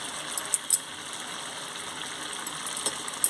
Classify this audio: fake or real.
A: real